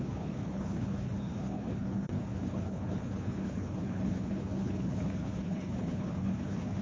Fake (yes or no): yes